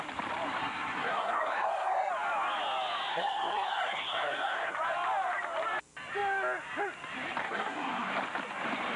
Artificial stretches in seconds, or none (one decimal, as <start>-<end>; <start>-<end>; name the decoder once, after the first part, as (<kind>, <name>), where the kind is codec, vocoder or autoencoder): 0.6-2.1 (codec, SNAC); 3.1-4.7; 7.4-8.1